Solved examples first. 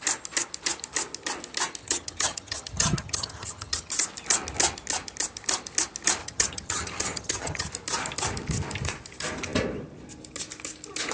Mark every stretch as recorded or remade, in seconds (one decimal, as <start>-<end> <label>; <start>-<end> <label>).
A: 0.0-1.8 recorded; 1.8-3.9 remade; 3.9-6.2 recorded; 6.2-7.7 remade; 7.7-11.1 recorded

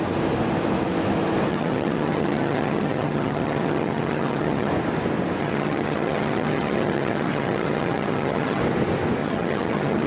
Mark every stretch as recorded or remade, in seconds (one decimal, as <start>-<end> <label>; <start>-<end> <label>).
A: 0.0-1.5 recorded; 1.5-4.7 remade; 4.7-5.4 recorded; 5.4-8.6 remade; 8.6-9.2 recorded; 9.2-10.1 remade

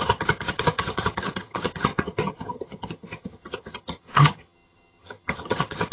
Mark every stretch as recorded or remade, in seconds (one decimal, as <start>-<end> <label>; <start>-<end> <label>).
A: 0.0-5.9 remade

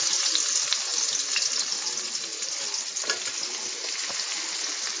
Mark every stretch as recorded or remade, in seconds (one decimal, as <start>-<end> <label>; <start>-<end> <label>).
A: 0.0-5.0 recorded

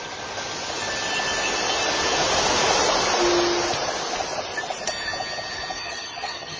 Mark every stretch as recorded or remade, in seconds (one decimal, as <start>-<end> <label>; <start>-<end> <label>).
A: 0.0-5.8 recorded; 5.8-6.6 remade

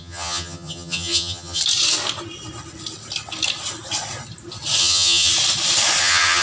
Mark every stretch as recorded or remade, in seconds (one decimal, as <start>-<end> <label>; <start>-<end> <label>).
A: 0.0-1.6 remade; 1.6-4.8 recorded; 4.8-5.3 remade; 5.3-6.0 recorded; 6.0-6.4 remade